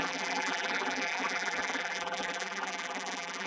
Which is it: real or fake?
fake